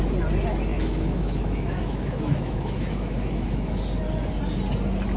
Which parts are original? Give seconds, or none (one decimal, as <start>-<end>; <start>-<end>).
0.0-0.7; 3.8-5.2